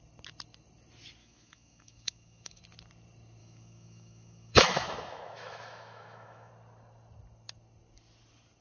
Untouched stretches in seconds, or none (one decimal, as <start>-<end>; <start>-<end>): 0.0-1.2; 2.6-3.4; 6.5-8.6